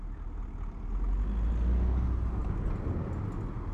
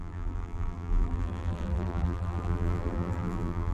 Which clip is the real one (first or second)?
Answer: first